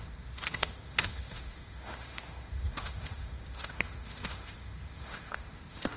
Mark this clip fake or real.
fake